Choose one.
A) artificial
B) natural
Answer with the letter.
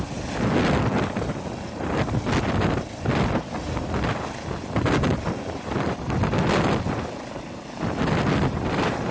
B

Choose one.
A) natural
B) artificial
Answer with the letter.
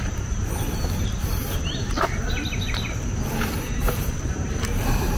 B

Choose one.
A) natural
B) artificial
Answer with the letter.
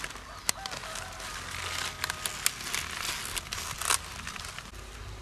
A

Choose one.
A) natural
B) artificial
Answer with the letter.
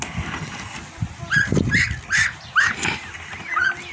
A